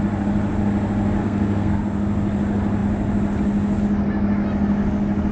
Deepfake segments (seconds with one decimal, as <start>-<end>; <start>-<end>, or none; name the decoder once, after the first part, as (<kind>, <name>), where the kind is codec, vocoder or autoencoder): 1.2-1.8 (codec, SNAC)